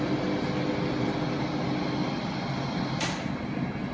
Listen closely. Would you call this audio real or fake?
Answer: real